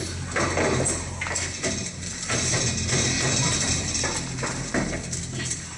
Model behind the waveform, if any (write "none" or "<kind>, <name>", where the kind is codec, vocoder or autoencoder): none